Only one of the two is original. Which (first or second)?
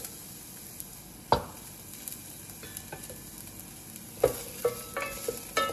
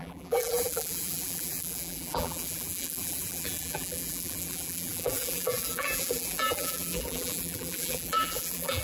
first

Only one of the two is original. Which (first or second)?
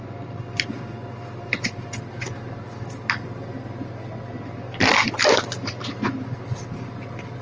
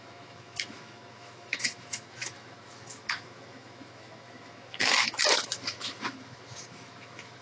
first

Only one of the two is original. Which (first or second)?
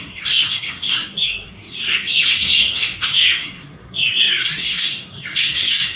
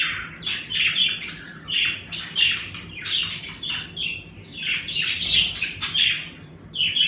second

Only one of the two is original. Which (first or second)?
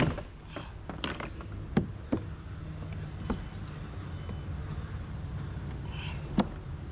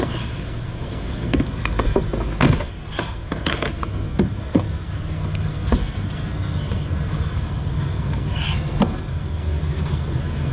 first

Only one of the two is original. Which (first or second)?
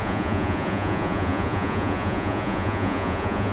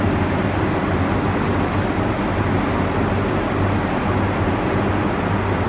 second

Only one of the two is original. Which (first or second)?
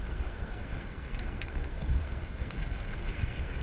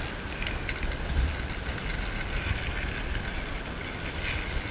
second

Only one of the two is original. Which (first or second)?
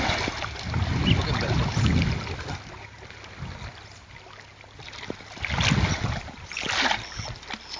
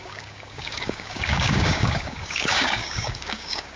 first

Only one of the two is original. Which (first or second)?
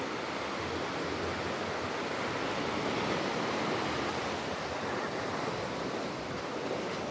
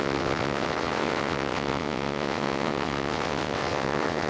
first